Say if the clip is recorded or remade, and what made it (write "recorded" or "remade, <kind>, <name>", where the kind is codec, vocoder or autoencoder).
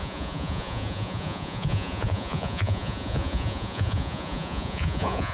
remade, vocoder, Vocos